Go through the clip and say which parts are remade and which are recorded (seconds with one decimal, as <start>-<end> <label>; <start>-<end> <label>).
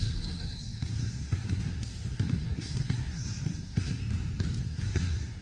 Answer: 0.0-4.0 remade; 4.0-4.6 recorded; 4.6-5.4 remade